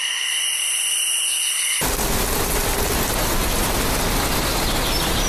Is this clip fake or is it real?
real